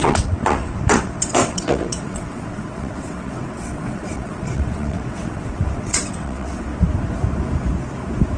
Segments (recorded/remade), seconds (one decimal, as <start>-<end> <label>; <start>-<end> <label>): 0.0-6.7 remade; 6.7-8.4 recorded